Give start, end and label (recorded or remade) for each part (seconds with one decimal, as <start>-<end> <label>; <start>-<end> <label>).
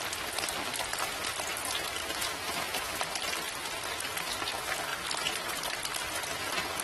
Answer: 0.0-2.0 recorded; 2.0-3.0 remade; 3.0-6.8 recorded